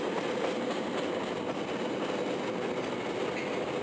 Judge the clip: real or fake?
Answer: real